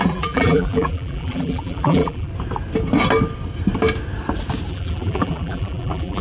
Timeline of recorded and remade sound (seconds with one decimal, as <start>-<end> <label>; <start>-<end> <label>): 0.0-2.3 remade; 2.3-4.7 recorded; 4.7-6.2 remade